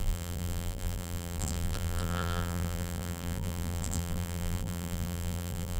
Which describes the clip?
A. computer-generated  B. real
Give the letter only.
A